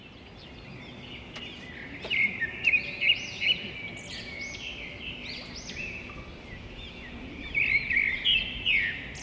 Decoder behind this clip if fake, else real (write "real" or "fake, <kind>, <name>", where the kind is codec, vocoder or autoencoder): real